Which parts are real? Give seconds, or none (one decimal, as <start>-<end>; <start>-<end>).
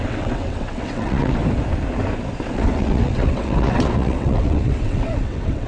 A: 1.4-2.5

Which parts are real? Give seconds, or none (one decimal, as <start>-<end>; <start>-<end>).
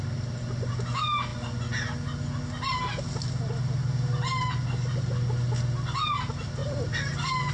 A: 0.0-6.6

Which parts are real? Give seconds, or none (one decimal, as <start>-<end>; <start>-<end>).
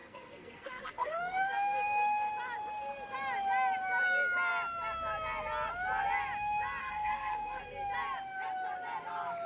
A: 2.3-6.8; 7.6-9.5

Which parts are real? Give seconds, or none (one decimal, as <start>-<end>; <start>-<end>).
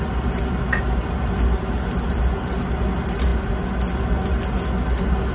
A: 0.0-5.3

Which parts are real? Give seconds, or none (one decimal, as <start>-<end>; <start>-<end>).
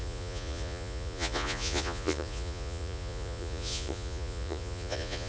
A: none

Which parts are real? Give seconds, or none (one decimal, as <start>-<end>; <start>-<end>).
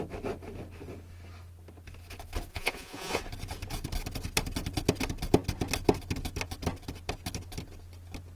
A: 0.0-2.5; 3.2-8.3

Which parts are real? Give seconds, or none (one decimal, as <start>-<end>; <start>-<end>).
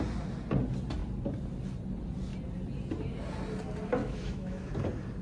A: 0.0-4.0; 4.7-5.2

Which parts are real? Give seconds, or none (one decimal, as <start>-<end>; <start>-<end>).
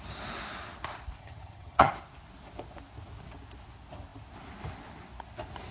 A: 0.0-1.2; 1.9-5.7